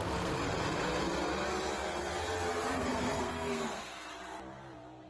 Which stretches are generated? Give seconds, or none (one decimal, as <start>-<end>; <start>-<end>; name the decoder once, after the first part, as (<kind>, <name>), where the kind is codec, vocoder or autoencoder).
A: 0.0-0.5 (codec, SNAC); 2.8-4.1